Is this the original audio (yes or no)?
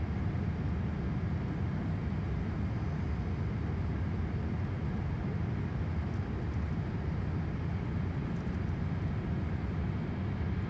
yes